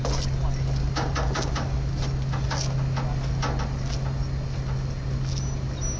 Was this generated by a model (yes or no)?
no